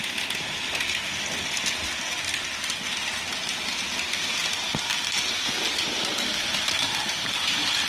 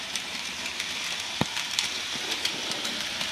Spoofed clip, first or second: second